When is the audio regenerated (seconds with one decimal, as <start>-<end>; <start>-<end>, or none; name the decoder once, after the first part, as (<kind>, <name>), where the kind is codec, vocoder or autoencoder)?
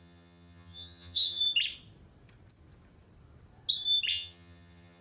0.0-1.4 (vocoder, HiFi-GAN); 4.1-5.0